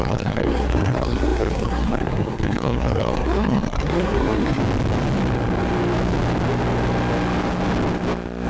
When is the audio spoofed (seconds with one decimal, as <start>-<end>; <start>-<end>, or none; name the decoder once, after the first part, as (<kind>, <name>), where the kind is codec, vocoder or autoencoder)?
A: 0.0-4.6 (codec, SNAC)